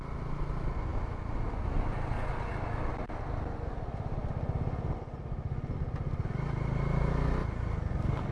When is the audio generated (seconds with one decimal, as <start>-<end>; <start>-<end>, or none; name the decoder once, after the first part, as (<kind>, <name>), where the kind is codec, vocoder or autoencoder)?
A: none